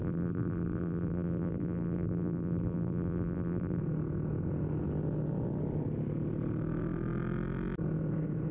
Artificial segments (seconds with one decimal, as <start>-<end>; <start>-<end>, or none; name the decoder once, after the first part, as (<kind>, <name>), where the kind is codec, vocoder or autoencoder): 0.0-3.8 (vocoder, BigVGAN v2)